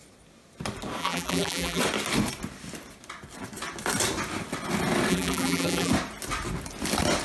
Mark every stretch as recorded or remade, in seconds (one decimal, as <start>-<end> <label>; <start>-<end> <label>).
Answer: 0.0-1.0 recorded; 1.0-1.8 remade; 1.8-5.1 recorded; 5.1-5.9 remade; 5.9-7.2 recorded

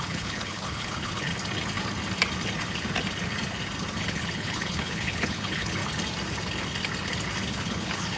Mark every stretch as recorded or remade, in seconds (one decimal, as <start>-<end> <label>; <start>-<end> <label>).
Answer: 0.0-1.3 remade; 1.3-4.0 recorded; 4.0-5.8 remade; 5.8-7.5 recorded; 7.5-8.2 remade

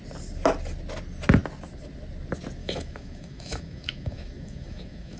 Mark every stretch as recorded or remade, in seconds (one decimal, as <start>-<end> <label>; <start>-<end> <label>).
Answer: 0.0-2.6 recorded; 2.6-5.2 remade

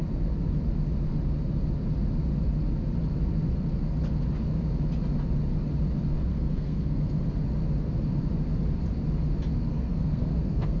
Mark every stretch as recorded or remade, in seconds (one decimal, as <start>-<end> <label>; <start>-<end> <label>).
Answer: 0.0-6.3 recorded; 6.3-7.2 remade; 7.2-9.7 recorded; 9.7-10.8 remade

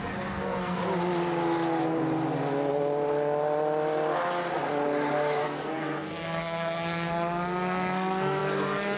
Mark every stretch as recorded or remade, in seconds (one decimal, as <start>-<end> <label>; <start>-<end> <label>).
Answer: 0.0-0.8 remade; 0.8-5.4 recorded; 5.4-9.0 remade

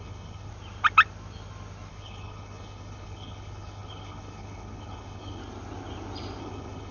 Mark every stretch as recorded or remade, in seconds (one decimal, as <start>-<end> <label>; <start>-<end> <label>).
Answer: 0.0-0.5 remade; 0.5-1.9 recorded; 1.9-5.4 remade; 5.4-6.4 recorded; 6.4-6.9 remade